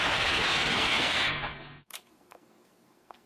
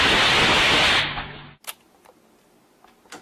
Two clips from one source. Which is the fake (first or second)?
first